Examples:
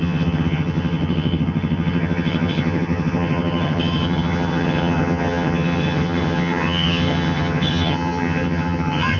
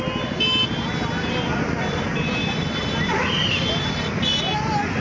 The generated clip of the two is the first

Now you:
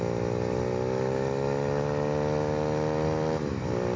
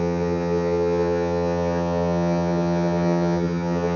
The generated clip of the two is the second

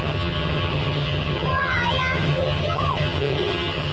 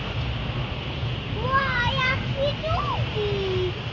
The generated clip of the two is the first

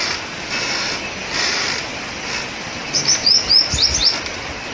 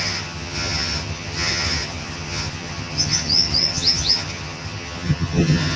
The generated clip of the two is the second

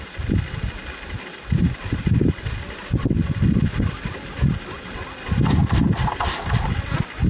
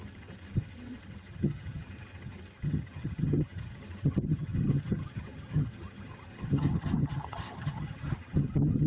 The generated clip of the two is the second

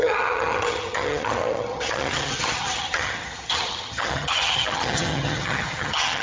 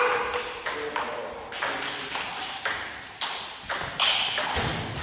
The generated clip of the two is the first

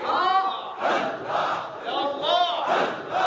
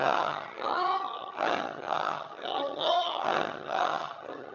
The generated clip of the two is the second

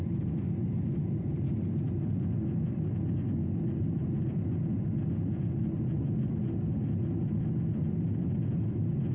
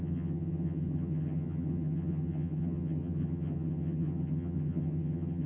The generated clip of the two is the second